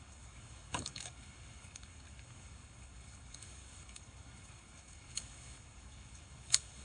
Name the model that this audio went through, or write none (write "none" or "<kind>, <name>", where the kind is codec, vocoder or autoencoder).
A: codec, DAC